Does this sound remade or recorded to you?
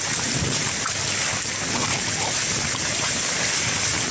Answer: recorded